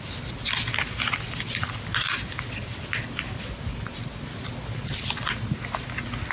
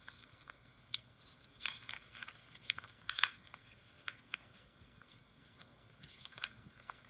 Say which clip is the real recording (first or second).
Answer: first